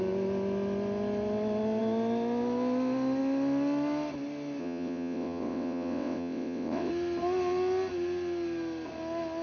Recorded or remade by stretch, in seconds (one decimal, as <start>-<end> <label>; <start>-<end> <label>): 0.0-4.6 recorded; 4.6-6.9 remade; 6.9-9.4 recorded